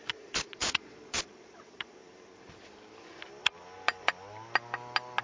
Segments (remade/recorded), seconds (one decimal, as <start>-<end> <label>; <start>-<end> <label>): 0.0-2.0 remade; 2.0-5.2 recorded